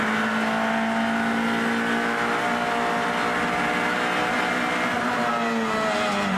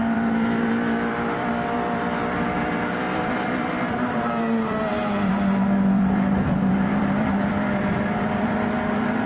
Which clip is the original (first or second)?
first